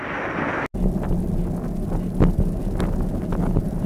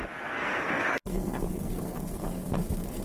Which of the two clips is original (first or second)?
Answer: first